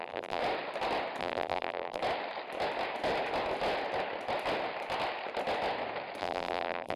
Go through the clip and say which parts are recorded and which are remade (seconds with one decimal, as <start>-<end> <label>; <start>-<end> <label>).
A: 0.0-0.4 remade; 0.4-1.2 recorded; 1.2-2.0 remade; 2.0-6.2 recorded; 6.2-7.0 remade